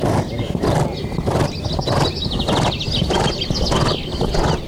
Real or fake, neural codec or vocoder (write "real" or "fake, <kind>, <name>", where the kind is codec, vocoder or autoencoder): real